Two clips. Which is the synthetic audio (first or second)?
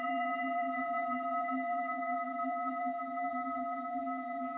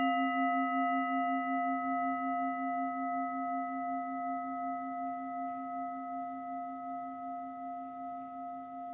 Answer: first